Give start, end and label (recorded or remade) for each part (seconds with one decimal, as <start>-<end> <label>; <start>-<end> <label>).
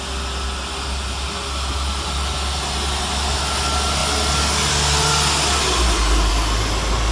0.0-7.1 recorded